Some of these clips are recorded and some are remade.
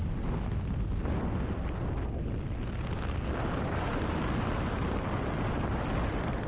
recorded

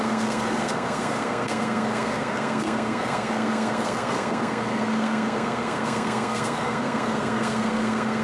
remade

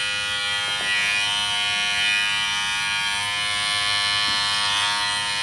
recorded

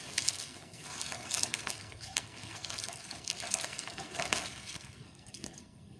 remade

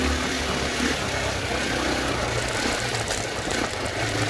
recorded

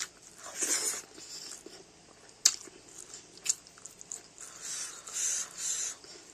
recorded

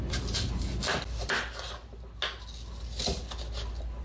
recorded